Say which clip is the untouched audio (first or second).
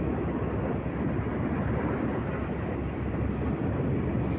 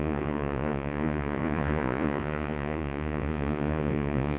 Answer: first